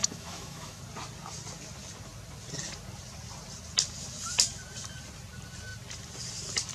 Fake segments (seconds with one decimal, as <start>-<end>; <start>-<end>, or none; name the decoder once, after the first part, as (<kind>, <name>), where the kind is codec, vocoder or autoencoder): 0.0-0.8 (autoencoder, DAC-VAE)